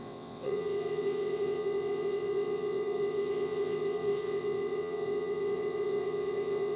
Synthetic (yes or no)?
yes